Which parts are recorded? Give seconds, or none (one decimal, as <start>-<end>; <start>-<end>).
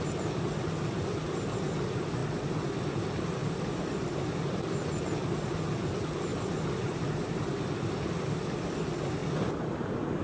0.0-3.4; 4.6-6.3; 7.4-10.2